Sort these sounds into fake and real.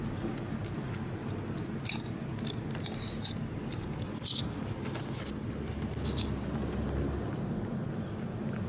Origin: real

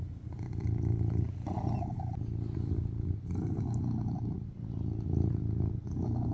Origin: fake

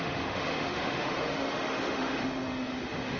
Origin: fake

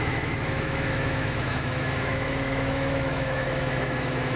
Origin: fake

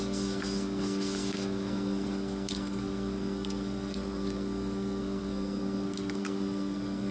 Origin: fake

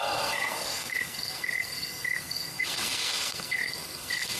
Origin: fake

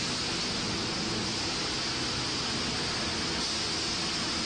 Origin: real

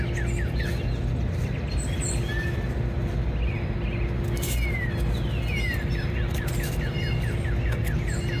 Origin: real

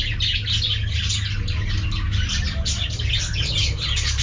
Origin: real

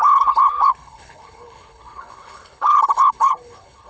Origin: fake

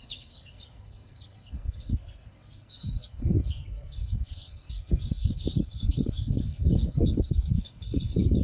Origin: fake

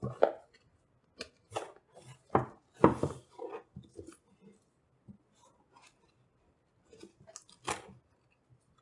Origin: real